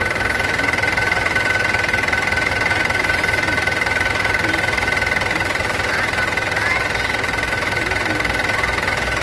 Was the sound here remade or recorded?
recorded